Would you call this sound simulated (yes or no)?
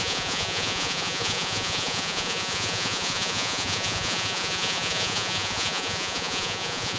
yes